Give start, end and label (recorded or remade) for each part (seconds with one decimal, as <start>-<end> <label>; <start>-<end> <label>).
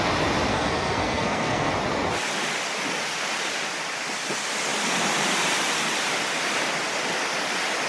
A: 0.0-0.5 recorded; 0.5-1.7 remade; 1.7-7.9 recorded